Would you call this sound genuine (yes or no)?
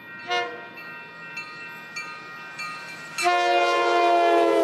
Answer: yes